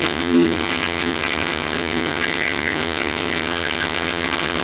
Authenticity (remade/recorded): remade